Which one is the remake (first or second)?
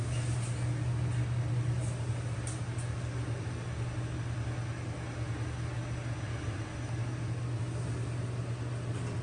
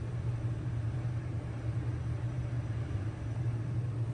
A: second